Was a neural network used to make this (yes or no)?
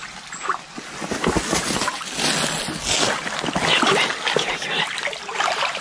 no